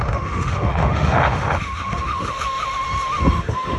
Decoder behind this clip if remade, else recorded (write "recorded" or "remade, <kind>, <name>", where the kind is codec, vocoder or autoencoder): remade, autoencoder, DAC-VAE